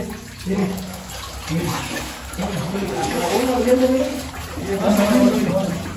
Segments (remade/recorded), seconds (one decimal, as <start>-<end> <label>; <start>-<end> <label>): 0.0-0.6 recorded; 0.6-1.1 remade; 1.1-1.7 recorded; 1.7-4.3 remade; 4.3-6.0 recorded